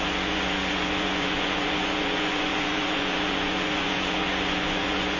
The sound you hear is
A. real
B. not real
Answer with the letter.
B